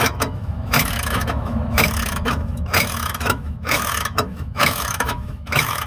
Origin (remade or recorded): remade